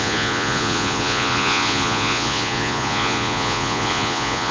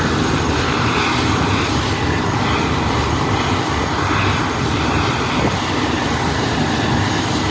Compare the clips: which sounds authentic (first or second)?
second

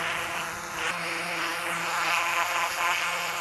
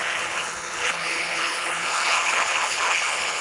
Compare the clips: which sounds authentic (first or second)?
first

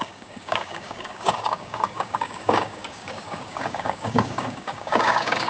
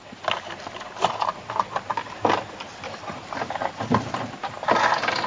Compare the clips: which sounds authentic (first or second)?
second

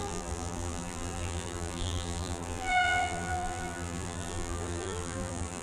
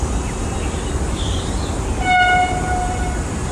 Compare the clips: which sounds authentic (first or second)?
second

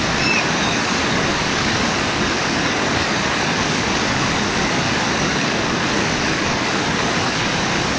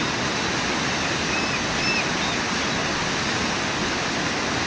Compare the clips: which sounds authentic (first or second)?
second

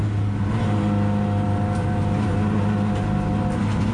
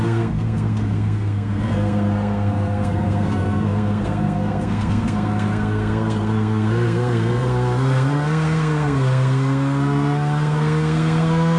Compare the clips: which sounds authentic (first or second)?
first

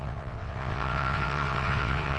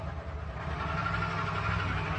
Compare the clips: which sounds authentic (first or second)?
second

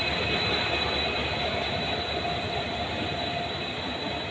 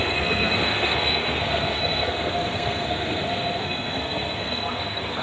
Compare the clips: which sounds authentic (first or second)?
first